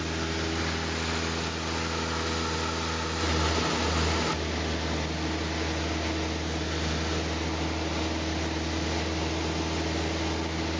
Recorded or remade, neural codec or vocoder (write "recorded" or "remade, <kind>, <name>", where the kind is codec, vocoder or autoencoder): recorded